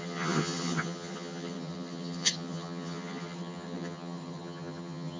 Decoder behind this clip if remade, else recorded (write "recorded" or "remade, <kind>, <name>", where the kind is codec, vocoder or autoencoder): remade, vocoder, HiFi-GAN